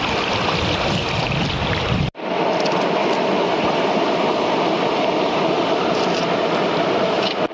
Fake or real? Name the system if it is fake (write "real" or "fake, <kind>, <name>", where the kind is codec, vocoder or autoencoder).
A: real